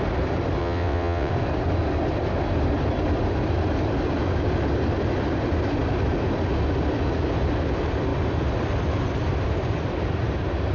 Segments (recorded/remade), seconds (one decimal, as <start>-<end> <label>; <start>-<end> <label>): 0.0-0.6 recorded; 0.6-1.3 remade; 1.3-10.7 recorded